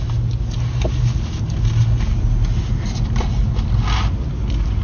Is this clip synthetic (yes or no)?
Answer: no